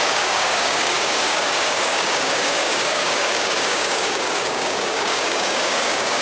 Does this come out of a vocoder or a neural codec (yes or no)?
yes